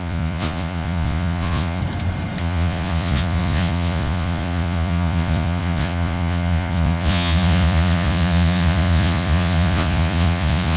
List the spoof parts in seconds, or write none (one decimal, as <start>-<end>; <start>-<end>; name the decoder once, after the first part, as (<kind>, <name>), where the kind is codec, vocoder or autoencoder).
0.0-1.8 (vocoder, Vocos); 2.4-10.8